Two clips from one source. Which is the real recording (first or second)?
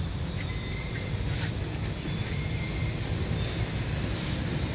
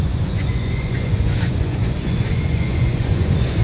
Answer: first